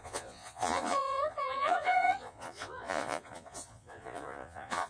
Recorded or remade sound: remade